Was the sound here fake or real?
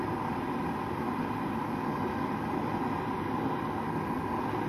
real